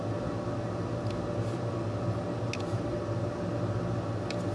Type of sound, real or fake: real